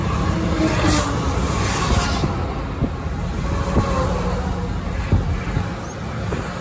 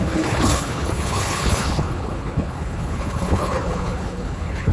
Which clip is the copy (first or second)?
second